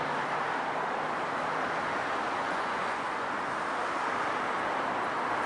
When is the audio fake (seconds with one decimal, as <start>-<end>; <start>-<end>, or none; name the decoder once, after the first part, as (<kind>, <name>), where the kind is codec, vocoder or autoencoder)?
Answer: 2.4-3.4 (vocoder, Vocos)